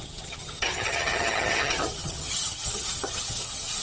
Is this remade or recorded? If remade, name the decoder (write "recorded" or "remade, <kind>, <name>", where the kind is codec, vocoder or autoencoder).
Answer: remade, vocoder, HiFi-GAN